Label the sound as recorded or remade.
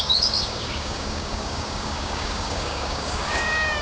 remade